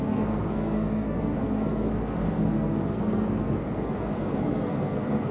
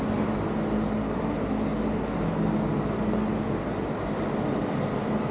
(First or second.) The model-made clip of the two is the first